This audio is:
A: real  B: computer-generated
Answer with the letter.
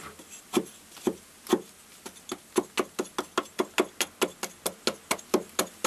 A